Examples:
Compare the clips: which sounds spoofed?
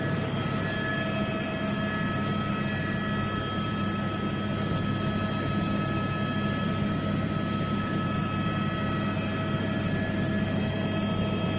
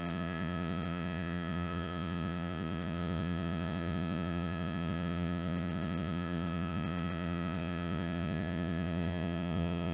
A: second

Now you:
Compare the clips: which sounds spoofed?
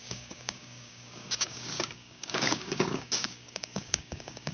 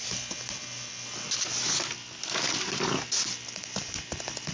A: first